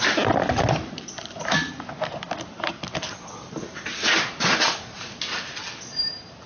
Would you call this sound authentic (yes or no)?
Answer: yes